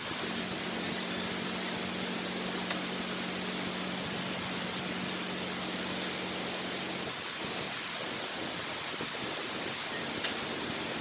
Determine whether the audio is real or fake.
real